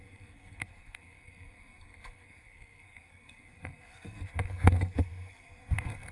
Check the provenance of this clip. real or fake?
fake